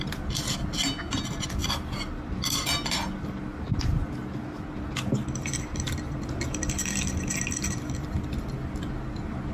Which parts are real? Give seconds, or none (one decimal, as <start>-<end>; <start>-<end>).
0.0-9.5